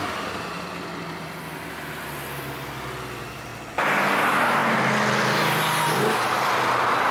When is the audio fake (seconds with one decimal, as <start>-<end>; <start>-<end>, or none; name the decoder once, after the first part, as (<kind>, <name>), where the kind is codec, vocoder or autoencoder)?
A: none